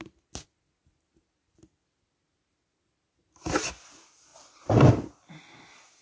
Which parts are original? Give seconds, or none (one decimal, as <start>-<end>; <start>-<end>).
0.0-6.0